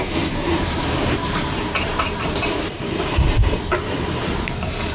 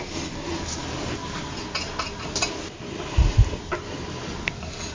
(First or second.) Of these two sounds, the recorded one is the second